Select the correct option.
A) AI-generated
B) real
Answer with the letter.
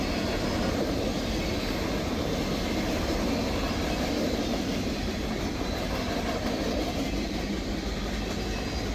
B